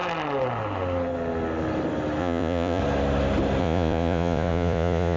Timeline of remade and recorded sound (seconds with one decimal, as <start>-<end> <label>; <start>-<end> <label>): 0.0-2.2 recorded; 2.2-2.8 remade; 2.8-3.6 recorded; 3.6-5.2 remade